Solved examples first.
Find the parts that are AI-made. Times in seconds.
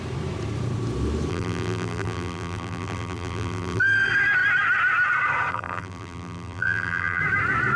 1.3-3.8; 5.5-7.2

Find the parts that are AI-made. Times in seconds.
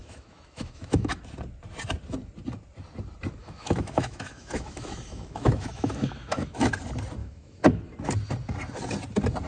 0.0-1.2; 3.4-6.7; 7.2-7.8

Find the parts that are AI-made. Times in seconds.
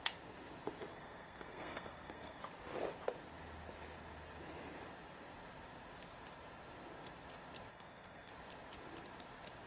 0.9-2.4; 7.7-8.3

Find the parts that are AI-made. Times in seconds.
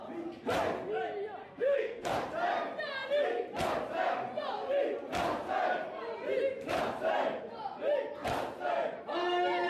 1.4-2.1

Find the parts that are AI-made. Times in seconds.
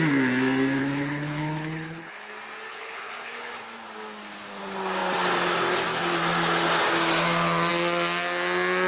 0.8-2.3; 2.7-3.5